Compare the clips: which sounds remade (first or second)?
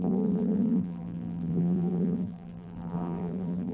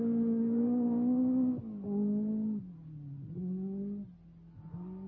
first